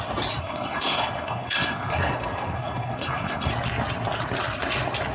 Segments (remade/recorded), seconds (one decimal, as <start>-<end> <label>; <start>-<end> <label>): 0.0-0.4 recorded; 0.4-3.5 remade; 3.5-5.1 recorded